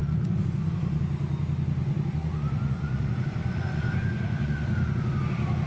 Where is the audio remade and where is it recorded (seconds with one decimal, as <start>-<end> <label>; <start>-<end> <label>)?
0.0-1.0 remade; 1.0-1.8 recorded; 1.8-5.2 remade; 5.2-5.7 recorded